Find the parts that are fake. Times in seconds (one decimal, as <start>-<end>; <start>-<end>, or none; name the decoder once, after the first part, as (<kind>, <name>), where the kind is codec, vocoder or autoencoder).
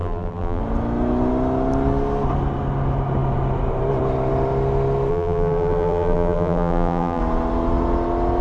0.0-0.6 (vocoder, BigVGAN v2); 5.1-7.2